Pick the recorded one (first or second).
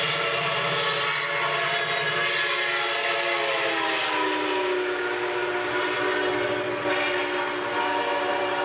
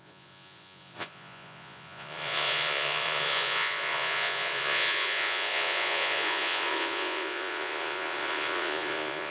first